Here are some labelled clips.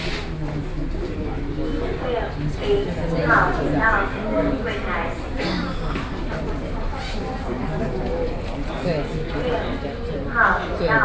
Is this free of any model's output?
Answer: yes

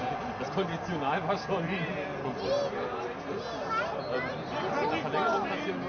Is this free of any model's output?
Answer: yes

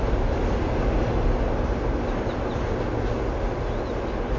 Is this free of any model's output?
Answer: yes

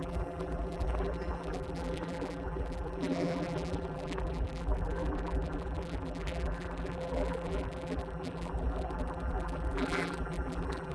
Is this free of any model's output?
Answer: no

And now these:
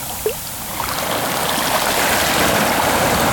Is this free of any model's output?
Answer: yes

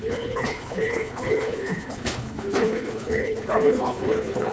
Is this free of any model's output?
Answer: no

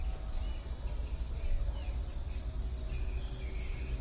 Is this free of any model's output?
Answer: yes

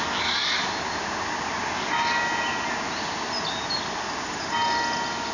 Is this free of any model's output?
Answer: yes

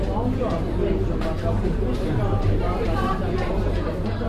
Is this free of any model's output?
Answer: no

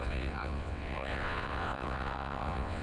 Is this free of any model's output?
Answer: no